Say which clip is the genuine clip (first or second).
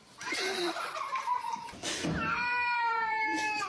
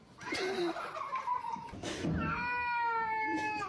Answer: second